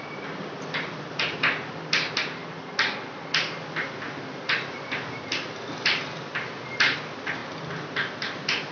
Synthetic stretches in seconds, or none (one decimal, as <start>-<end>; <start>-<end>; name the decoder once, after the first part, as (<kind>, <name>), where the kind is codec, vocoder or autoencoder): none